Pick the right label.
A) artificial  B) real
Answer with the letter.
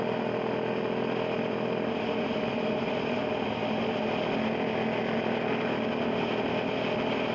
B